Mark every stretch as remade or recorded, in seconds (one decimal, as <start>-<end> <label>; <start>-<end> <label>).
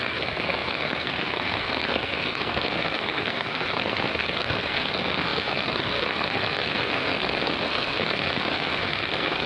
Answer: 0.0-9.5 remade